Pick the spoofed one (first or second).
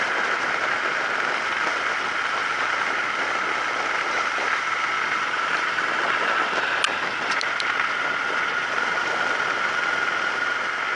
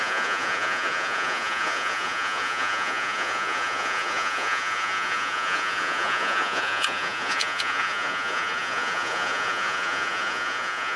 second